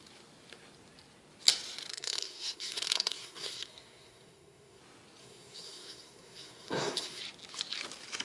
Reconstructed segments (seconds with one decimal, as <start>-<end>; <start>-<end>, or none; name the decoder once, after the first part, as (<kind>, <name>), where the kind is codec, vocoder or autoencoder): 1.9-4.8 (codec, SNAC); 5.2-7.2